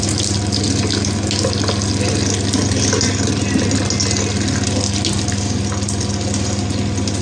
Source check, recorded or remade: recorded